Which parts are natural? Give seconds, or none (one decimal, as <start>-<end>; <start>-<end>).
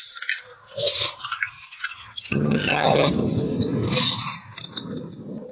0.0-1.9; 3.1-5.5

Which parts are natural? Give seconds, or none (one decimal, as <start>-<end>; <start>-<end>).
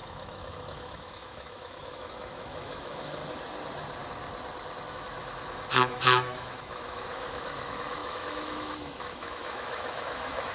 3.2-4.9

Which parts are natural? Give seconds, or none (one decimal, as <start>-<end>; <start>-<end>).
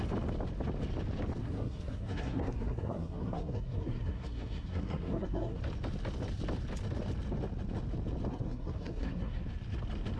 0.0-1.4; 5.6-8.3; 9.4-10.2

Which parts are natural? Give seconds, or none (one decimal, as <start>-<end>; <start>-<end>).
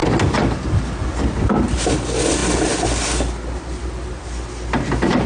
0.0-5.3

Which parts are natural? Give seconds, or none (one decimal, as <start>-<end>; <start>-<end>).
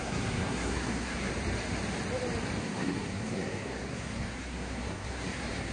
1.3-2.6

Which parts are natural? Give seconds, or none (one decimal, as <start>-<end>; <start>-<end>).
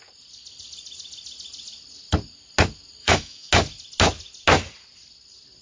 0.0-3.0; 3.5-5.6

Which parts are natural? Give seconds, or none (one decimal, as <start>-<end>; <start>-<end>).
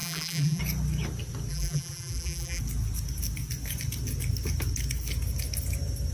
0.6-1.5; 2.6-6.1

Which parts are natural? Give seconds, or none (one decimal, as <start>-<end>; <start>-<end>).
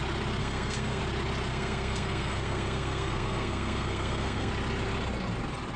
0.0-0.4; 1.0-1.5; 4.5-5.8